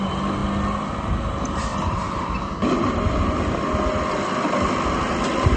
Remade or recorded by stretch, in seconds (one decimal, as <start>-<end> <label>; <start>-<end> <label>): 0.0-5.6 recorded